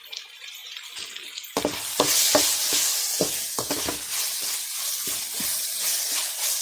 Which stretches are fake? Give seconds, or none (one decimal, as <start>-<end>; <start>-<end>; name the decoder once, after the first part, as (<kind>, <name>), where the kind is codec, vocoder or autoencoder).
0.0-0.6 (vocoder, BigVGAN v2); 4.6-6.6